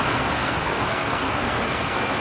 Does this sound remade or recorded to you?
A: remade